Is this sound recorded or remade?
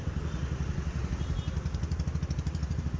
recorded